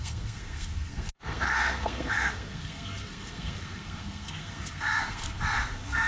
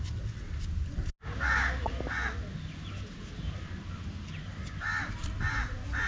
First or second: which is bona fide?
second